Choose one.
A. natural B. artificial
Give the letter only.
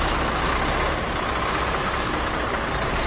A